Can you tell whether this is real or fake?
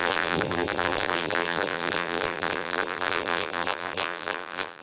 fake